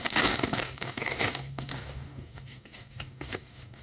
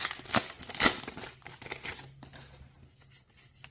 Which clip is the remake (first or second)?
first